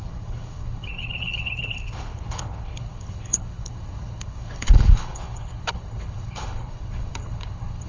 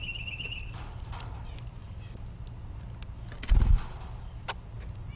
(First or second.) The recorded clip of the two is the second